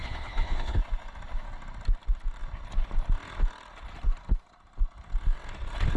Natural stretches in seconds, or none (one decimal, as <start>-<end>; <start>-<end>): 0.8-6.0